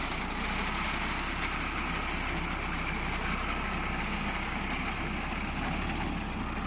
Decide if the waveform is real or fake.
real